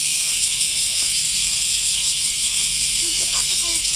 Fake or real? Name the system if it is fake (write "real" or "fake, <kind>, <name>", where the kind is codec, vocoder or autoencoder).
fake, codec, SNAC